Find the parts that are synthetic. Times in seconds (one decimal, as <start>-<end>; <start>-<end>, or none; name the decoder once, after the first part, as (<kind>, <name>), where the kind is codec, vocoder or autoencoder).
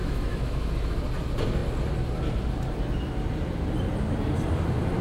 0.0-0.9 (autoencoder, DAC-VAE)